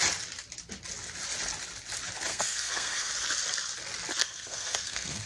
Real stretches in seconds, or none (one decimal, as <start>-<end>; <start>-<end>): 0.0-2.3; 3.1-4.2